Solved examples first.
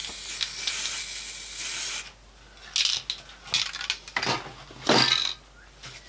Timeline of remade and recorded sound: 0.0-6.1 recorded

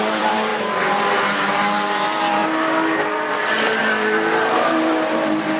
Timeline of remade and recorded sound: 0.0-0.5 remade; 0.5-1.5 recorded; 1.5-2.4 remade; 2.4-3.0 recorded; 3.0-5.6 remade

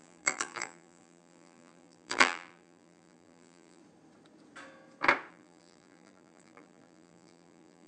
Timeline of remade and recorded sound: 0.0-3.8 remade; 3.8-5.3 recorded; 5.3-7.9 remade

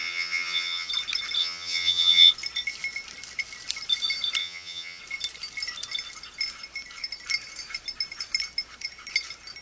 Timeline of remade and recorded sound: 0.0-0.9 remade; 0.9-1.4 recorded; 1.4-2.3 remade; 2.3-4.4 recorded; 4.4-5.0 remade; 5.0-9.6 recorded

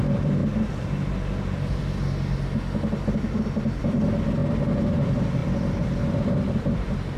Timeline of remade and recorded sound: 0.0-0.4 remade; 0.4-3.8 recorded; 3.8-4.4 remade; 4.4-4.9 recorded; 4.9-7.2 remade

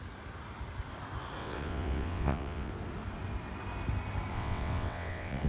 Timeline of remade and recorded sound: 0.0-1.4 recorded; 1.4-2.7 remade; 2.7-4.3 recorded; 4.3-5.5 remade

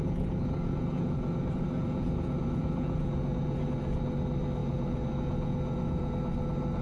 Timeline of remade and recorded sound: 0.0-4.0 remade; 4.0-4.6 recorded; 4.6-6.1 remade; 6.1-6.8 recorded